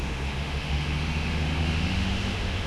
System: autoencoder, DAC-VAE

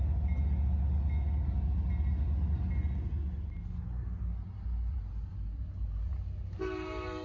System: none